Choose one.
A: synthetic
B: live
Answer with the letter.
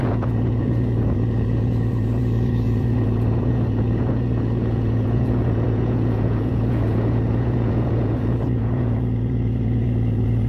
A